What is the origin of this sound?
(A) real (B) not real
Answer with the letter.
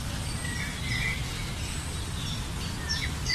A